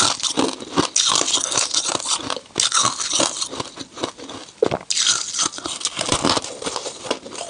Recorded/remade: recorded